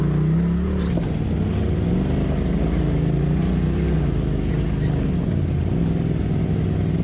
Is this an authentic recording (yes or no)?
yes